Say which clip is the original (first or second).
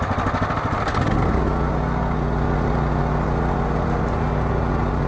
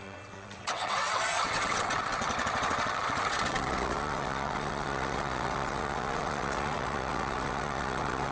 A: first